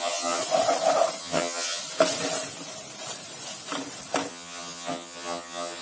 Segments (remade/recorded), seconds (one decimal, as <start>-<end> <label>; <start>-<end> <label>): 0.0-0.4 remade; 0.4-1.2 recorded; 1.2-1.8 remade; 1.8-4.3 recorded; 4.3-5.8 remade